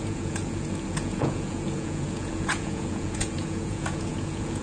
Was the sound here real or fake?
fake